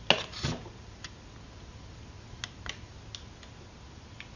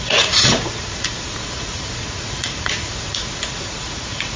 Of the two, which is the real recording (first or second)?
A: first